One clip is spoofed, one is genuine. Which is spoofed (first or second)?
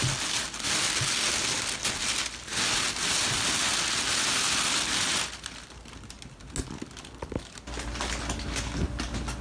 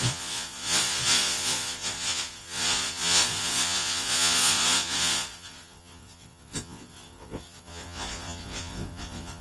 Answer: second